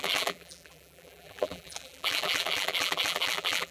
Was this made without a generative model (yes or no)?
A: no